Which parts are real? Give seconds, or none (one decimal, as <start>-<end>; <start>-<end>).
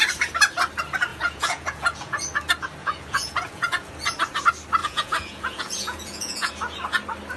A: 0.0-1.1; 2.2-2.8; 3.9-4.8; 6.5-7.4